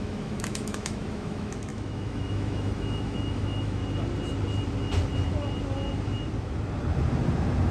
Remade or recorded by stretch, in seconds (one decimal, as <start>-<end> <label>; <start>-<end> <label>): 0.0-3.8 remade; 3.8-7.7 recorded

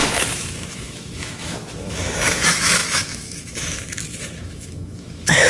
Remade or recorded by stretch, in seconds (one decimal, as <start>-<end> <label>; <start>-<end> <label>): 0.0-5.5 remade

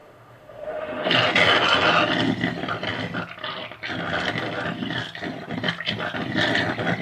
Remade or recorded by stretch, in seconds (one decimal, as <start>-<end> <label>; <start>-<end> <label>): 0.0-1.1 remade; 1.1-7.0 recorded

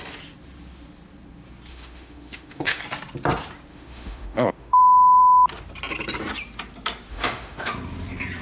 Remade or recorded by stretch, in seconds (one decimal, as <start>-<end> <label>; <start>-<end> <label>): 0.0-1.7 recorded; 1.7-2.8 remade; 2.8-3.7 recorded; 3.7-4.8 remade; 4.8-7.1 recorded; 7.1-7.7 remade; 7.7-8.4 recorded

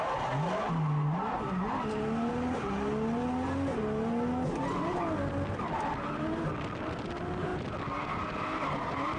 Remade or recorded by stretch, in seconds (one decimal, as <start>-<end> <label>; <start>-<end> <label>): 0.0-9.2 recorded

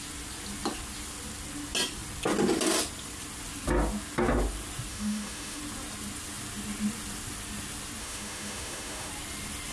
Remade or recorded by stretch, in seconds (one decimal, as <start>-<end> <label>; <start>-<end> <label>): 0.0-4.9 recorded; 4.9-5.6 remade; 5.6-8.0 recorded; 8.0-9.1 remade; 9.1-9.7 recorded

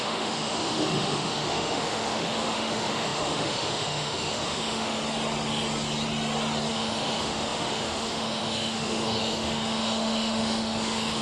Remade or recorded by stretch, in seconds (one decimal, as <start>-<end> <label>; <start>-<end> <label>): 0.0-5.0 remade; 5.0-6.7 recorded; 6.7-11.2 remade